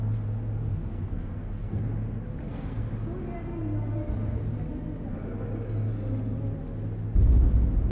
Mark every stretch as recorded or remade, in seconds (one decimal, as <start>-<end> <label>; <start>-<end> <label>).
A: 0.0-0.9 recorded; 0.9-1.8 remade; 1.8-2.4 recorded; 2.4-2.9 remade; 2.9-7.9 recorded